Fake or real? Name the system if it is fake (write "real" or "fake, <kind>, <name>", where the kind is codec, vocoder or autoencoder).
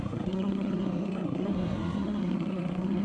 fake, codec, SNAC